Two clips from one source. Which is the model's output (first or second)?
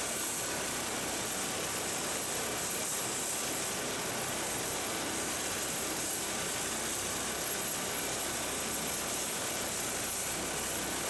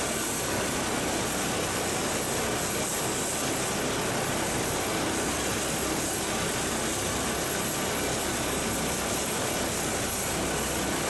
first